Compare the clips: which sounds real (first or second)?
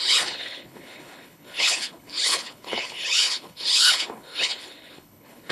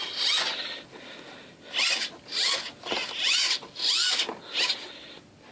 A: second